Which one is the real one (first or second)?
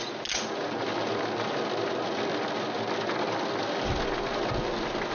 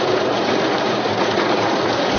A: first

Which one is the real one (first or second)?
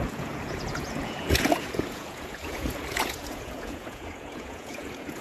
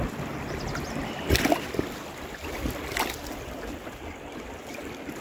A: second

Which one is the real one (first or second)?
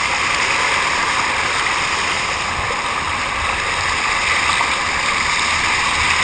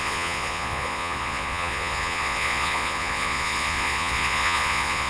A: first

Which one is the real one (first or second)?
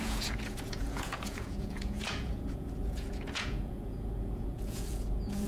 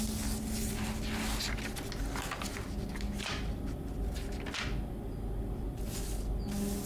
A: second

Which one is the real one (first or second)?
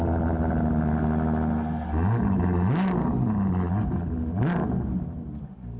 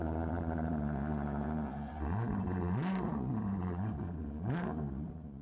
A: first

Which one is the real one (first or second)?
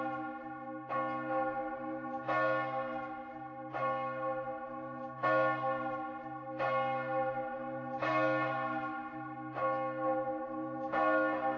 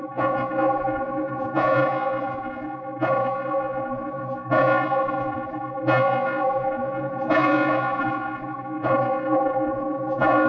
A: first